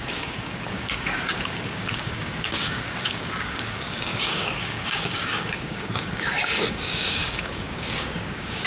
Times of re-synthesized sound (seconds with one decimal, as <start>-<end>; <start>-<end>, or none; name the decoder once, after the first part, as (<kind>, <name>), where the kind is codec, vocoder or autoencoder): 0.0-8.7 (codec, DAC)